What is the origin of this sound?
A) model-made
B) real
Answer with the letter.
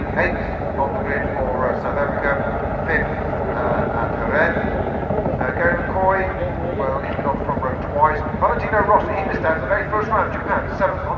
B